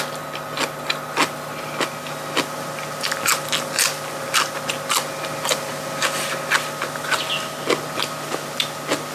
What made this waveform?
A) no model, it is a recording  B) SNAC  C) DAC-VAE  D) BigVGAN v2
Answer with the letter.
A